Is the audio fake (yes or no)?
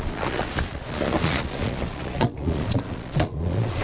yes